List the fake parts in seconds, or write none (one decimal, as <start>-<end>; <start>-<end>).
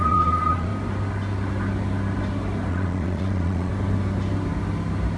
0.0-0.7; 2.7-3.7